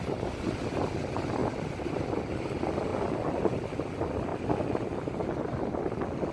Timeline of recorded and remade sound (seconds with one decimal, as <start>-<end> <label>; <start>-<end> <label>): 0.0-6.3 recorded